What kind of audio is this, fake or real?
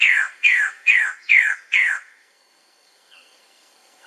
fake